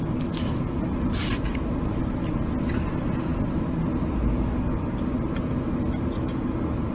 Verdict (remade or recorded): recorded